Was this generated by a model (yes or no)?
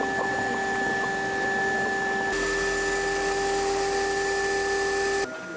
no